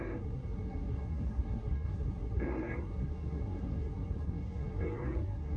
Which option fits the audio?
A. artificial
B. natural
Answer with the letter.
A